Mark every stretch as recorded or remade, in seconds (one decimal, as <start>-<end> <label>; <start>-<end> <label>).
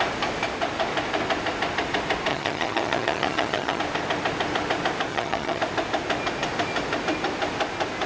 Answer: 0.0-2.3 recorded; 2.3-3.8 remade; 3.8-5.1 recorded; 5.1-5.6 remade; 5.6-8.1 recorded